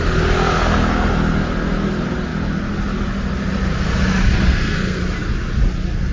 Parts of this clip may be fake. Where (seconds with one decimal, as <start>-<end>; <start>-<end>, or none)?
4.5-5.0